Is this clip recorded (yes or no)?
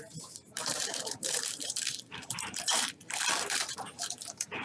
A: no